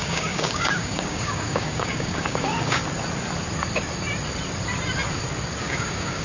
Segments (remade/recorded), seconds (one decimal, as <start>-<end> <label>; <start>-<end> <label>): 0.0-2.8 remade; 2.8-5.6 recorded; 5.6-6.2 remade